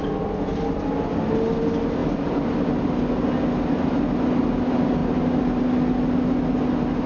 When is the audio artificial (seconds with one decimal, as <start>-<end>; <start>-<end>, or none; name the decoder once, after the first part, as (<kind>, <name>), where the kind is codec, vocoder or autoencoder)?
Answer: none